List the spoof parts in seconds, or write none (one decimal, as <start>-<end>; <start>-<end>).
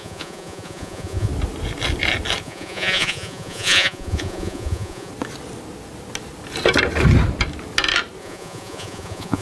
0.0-1.3; 2.4-5.1; 8.2-9.4